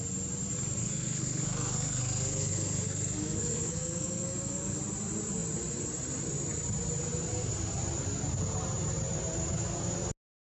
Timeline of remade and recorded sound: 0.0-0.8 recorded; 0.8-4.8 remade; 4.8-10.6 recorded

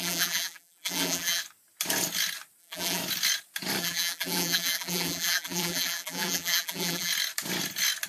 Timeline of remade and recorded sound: 0.0-1.4 remade; 1.4-2.6 recorded; 2.6-3.0 remade; 3.0-3.8 recorded; 3.8-7.1 remade; 7.1-8.1 recorded

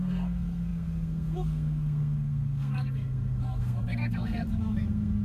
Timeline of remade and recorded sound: 0.0-5.2 remade

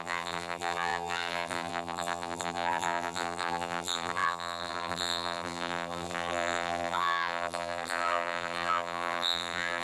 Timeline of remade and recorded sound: 0.0-9.8 remade

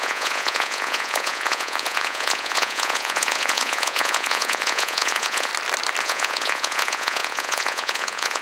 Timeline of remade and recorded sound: 0.0-5.5 remade; 5.5-6.0 recorded; 6.0-8.4 remade

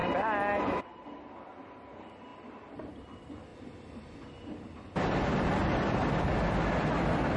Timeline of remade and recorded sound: 0.0-7.4 recorded

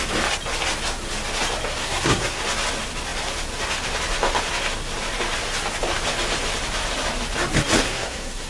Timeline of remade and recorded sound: 0.0-1.8 recorded; 1.8-2.4 remade; 2.4-7.8 recorded; 7.8-8.5 remade